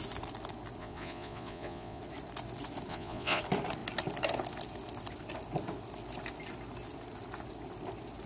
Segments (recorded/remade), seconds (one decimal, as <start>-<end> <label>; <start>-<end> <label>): 0.0-0.8 recorded; 0.8-2.0 remade; 2.0-2.9 recorded; 2.9-3.4 remade; 3.4-8.3 recorded